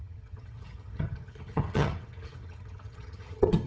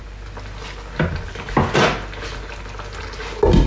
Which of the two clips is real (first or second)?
second